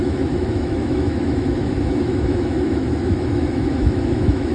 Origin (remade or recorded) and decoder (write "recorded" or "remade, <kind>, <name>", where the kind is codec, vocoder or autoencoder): remade, autoencoder, DAC-VAE